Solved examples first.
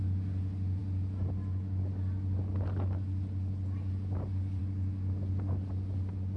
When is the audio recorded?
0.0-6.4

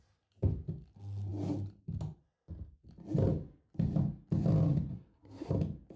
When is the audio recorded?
0.0-4.9; 5.5-6.0

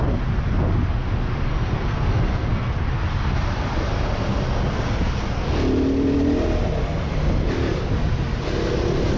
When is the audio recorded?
0.0-1.5; 2.7-9.2

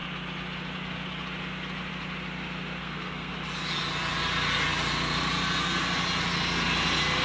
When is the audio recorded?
0.0-2.8; 3.3-7.2

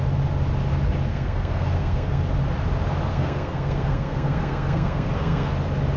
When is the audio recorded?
0.0-1.1; 2.2-3.1; 5.5-6.0